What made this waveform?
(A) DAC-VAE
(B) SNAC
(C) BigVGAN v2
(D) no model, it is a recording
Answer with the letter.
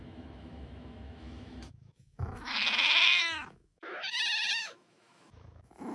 A